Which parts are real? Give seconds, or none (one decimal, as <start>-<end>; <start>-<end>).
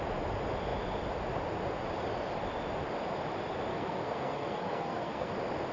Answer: 0.0-3.7; 5.3-5.7